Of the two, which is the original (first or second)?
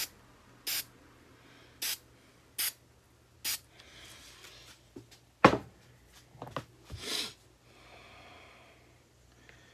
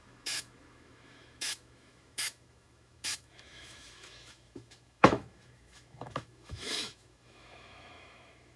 first